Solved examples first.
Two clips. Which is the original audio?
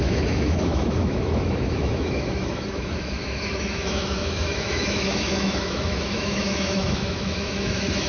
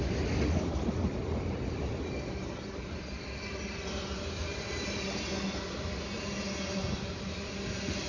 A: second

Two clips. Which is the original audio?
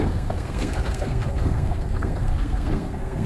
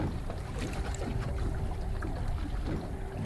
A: second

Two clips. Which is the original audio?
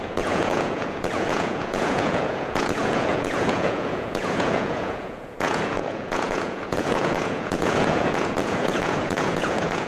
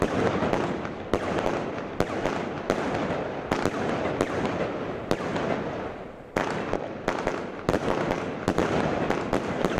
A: second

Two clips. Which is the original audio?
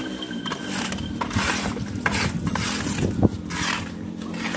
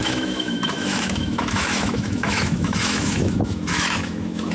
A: first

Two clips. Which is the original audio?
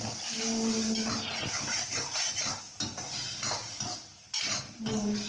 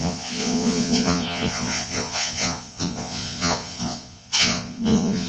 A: first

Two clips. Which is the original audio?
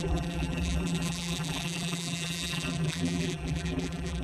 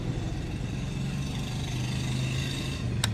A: second